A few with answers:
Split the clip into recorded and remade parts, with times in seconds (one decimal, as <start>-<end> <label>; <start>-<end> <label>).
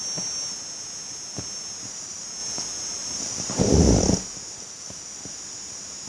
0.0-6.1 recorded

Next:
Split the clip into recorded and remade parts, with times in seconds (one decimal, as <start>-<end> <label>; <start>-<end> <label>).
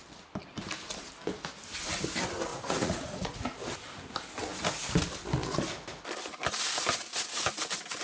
0.0-2.5 recorded; 2.5-3.4 remade; 3.4-8.0 recorded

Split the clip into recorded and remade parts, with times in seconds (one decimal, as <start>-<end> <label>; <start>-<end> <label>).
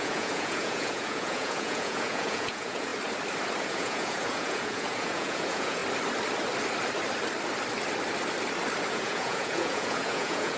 0.0-2.9 remade; 2.9-3.6 recorded; 3.6-5.8 remade; 5.8-8.9 recorded; 8.9-10.6 remade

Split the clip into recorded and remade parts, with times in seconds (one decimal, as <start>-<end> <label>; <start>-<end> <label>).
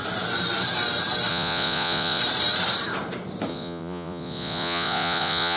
0.0-1.3 recorded; 1.3-2.2 remade; 2.2-3.5 recorded; 3.5-5.6 remade